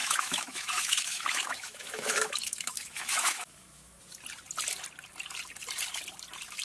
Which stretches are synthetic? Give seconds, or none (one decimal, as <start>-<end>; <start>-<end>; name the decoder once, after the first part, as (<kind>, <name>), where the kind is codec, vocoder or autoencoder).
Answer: 0.0-4.0 (autoencoder, DAC-VAE)

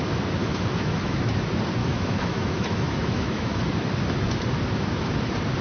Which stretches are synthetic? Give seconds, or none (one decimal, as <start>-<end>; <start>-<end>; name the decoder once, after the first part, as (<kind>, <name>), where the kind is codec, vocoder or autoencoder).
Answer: 0.4-1.2 (autoencoder, DAC-VAE); 1.8-3.6

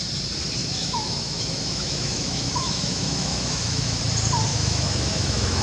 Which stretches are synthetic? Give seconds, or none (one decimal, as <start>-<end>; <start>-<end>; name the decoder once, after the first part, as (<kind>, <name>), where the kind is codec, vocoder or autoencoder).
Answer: 0.6-4.0 (autoencoder, DAC-VAE); 4.5-5.6